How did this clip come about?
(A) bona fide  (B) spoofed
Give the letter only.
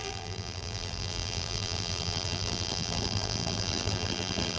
B